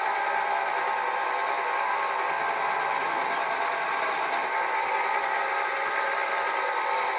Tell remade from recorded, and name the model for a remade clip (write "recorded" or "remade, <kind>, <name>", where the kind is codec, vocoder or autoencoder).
recorded